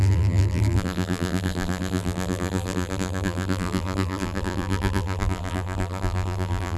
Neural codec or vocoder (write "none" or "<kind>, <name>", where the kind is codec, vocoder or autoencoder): vocoder, BigVGAN v2